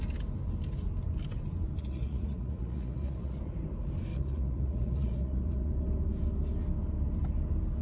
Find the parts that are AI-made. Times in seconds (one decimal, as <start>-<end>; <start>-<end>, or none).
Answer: 1.8-3.4; 4.1-5.7